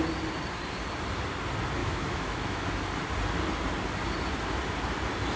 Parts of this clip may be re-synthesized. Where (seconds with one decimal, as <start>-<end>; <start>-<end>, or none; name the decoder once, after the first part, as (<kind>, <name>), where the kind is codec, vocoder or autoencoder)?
1.8-2.7 (autoencoder, DAC-VAE)